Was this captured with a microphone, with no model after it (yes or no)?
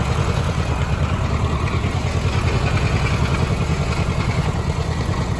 no